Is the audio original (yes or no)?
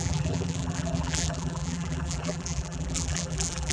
no